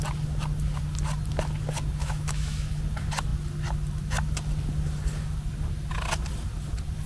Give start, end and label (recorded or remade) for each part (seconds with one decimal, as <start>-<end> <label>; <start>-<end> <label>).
0.0-2.0 recorded; 2.0-2.8 remade; 2.8-7.1 recorded